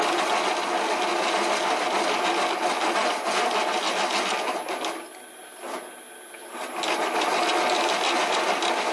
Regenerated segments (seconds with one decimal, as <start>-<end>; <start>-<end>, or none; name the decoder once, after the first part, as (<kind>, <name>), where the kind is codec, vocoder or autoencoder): none